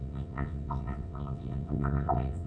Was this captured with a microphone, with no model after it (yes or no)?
no